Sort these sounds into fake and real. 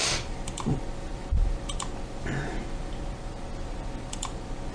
fake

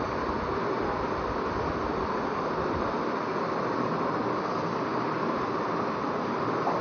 fake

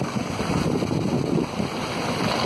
real